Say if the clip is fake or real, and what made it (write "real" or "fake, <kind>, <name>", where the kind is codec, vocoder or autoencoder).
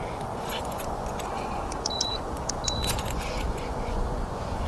fake, vocoder, Vocos